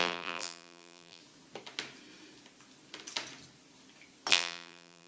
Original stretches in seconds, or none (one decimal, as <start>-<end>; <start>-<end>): 1.2-4.3